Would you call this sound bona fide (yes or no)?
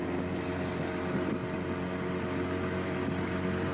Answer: yes